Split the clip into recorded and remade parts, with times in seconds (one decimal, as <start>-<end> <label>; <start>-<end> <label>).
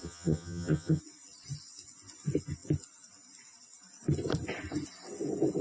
0.0-1.0 remade; 1.0-5.6 recorded